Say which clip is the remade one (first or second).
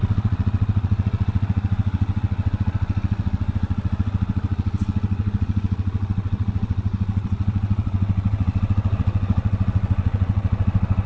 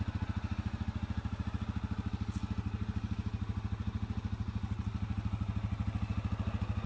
first